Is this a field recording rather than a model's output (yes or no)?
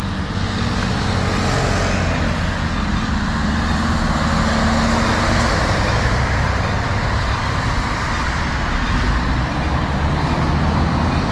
yes